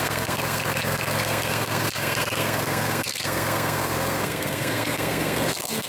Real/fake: fake